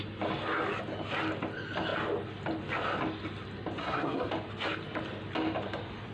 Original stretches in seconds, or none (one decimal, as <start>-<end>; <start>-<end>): 0.0-3.8; 4.3-6.1